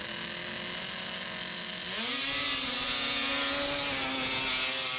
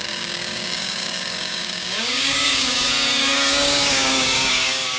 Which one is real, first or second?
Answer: first